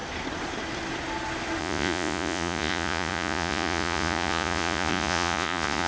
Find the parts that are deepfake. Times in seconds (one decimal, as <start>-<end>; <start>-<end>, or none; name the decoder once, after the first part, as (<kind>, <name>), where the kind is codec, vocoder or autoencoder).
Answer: 1.6-5.9 (vocoder, Vocos)